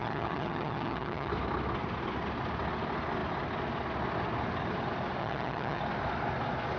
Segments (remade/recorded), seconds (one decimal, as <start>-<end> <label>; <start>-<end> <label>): 0.0-1.3 remade; 1.3-5.2 recorded; 5.2-5.8 remade; 5.8-6.8 recorded